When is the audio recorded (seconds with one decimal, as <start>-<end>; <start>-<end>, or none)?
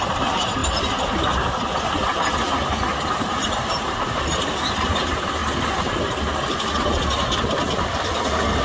0.6-3.1; 5.4-8.6